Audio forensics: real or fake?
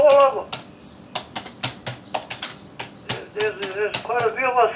real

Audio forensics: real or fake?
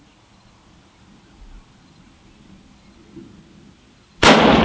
real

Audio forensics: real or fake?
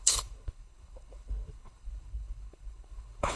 fake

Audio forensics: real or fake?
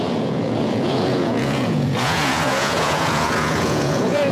fake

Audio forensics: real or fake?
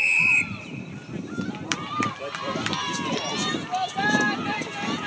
fake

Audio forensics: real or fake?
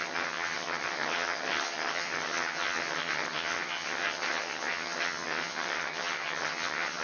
fake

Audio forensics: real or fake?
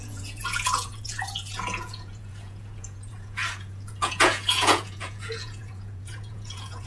fake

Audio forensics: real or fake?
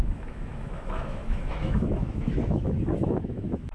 fake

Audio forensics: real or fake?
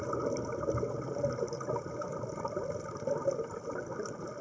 real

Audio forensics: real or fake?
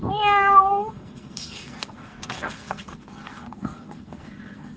fake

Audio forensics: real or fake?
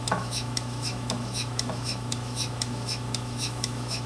fake